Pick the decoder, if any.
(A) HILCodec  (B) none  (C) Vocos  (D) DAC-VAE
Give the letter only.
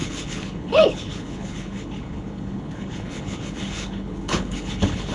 A